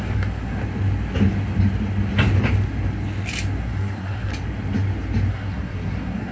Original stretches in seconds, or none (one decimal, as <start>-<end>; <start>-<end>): 0.6-3.6; 4.3-5.3